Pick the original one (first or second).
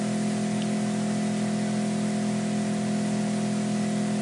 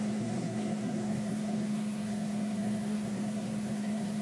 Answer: first